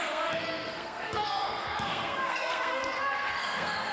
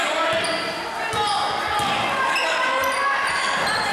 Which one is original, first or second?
second